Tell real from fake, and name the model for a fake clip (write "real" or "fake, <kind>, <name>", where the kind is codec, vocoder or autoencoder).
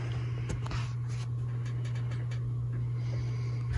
real